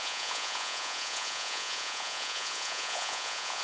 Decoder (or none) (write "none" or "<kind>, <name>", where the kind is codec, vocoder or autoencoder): vocoder, Vocos